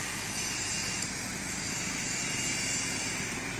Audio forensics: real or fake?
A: real